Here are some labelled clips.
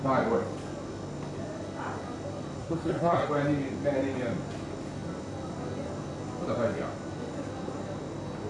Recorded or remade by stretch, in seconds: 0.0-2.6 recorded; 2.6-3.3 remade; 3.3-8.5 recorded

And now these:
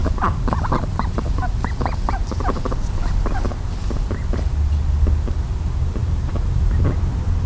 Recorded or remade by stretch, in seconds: 0.0-6.0 recorded; 6.0-6.8 remade; 6.8-7.5 recorded

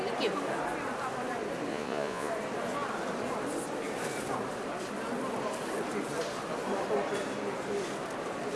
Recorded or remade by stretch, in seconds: 0.0-1.7 recorded; 1.7-2.3 remade; 2.3-8.6 recorded

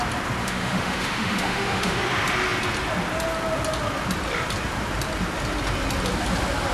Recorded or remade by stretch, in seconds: 0.0-0.4 recorded; 0.4-2.0 remade; 2.0-6.7 recorded

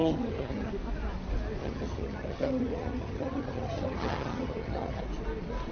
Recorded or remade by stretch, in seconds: 0.0-0.7 remade; 0.7-1.6 recorded; 1.6-5.0 remade; 5.0-5.7 recorded

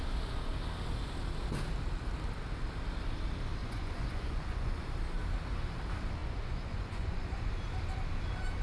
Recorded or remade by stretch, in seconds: 0.0-3.6 recorded; 3.6-4.9 remade; 4.9-6.2 recorded; 6.2-7.5 remade; 7.5-8.6 recorded